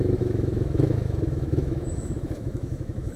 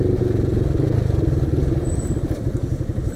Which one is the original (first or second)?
second